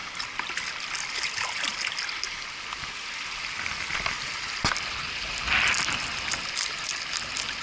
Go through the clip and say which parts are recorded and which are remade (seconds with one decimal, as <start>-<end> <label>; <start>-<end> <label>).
0.0-7.6 recorded